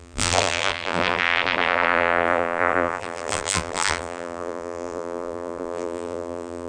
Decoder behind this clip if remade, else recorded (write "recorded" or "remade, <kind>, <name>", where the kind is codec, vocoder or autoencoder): remade, vocoder, BigVGAN v2